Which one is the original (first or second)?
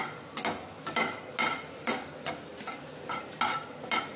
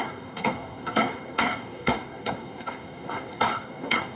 first